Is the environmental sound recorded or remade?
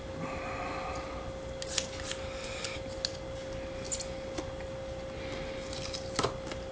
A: recorded